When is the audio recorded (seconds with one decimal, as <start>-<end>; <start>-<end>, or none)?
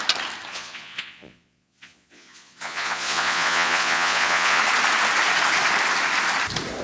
0.0-0.5; 4.6-6.8